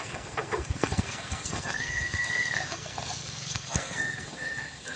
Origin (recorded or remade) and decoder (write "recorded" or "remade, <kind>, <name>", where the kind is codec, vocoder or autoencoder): remade, codec, SNAC